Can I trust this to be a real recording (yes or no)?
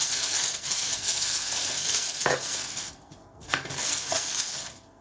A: no